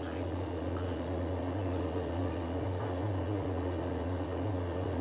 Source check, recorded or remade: remade